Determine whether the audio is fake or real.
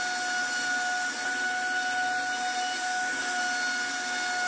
real